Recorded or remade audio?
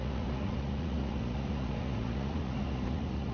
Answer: remade